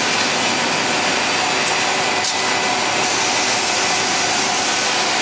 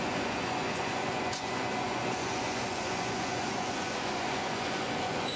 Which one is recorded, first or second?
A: first